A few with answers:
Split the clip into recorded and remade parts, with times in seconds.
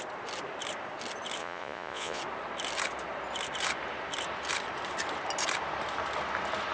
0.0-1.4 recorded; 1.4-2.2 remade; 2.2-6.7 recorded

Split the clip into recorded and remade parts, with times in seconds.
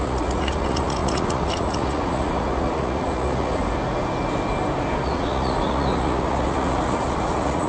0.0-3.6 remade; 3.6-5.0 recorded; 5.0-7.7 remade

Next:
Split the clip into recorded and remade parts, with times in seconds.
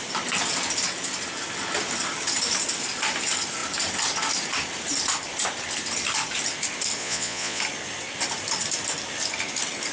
0.0-7.0 recorded; 7.0-7.6 remade; 7.6-9.9 recorded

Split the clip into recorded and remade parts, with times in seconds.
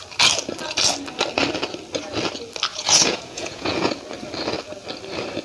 0.0-2.7 recorded; 2.7-4.0 remade; 4.0-5.4 recorded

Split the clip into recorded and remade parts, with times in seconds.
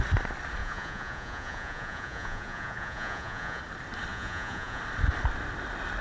0.0-0.6 recorded; 0.6-3.6 remade; 3.6-4.1 recorded; 4.1-4.8 remade; 4.8-6.0 recorded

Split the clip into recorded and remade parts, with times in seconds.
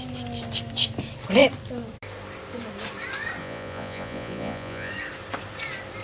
0.0-3.4 recorded; 3.4-4.9 remade; 4.9-6.0 recorded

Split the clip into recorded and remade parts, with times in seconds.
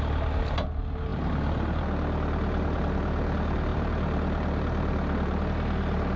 0.0-6.2 recorded